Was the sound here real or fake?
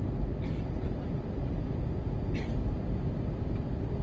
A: real